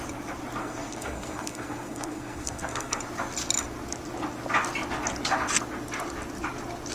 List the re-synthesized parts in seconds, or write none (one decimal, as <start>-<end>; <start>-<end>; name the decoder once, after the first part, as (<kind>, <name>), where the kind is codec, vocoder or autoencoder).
0.6-3.0 (codec, SNAC)